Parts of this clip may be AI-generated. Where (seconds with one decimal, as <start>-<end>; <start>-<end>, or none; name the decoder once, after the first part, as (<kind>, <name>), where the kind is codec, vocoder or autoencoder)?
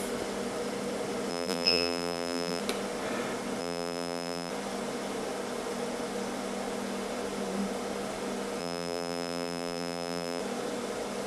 1.3-2.6 (vocoder, BigVGAN v2); 3.6-4.5; 8.6-10.4